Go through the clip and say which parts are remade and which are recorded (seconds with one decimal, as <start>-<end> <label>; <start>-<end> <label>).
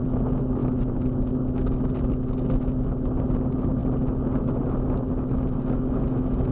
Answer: 0.0-6.5 recorded